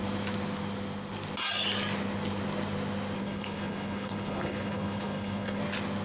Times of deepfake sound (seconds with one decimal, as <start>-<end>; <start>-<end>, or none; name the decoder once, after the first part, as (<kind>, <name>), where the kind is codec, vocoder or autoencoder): 3.2-5.6 (codec, HILCodec)